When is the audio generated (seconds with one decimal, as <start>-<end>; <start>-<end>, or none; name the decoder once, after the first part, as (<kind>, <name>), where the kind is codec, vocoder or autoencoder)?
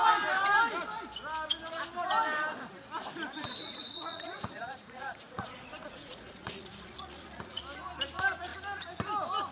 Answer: 3.6-7.6 (vocoder, Vocos)